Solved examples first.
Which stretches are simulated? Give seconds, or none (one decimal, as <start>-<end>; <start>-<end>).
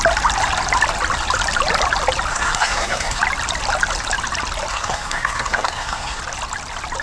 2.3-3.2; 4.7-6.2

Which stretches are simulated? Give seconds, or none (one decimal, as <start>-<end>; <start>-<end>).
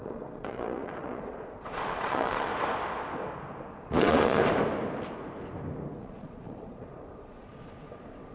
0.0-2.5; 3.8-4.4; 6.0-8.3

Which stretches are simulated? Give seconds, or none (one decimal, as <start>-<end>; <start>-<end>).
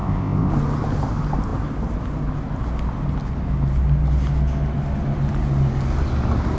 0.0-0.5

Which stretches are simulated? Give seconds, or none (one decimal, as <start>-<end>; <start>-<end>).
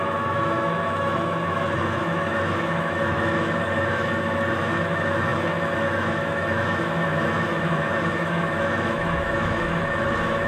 0.0-10.5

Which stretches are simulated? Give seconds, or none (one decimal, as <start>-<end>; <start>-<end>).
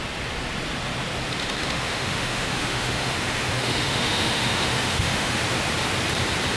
1.4-5.4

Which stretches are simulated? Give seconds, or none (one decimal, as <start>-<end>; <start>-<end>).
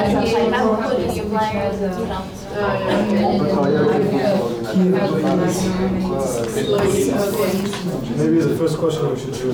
0.7-5.2; 6.5-7.7; 8.5-9.5